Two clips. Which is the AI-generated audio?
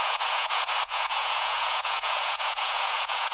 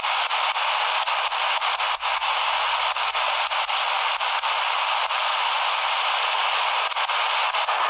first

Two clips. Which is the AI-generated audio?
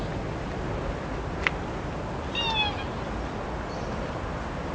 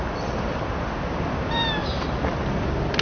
second